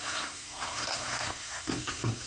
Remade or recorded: remade